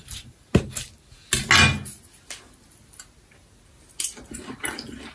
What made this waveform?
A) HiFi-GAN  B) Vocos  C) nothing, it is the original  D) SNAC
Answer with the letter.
C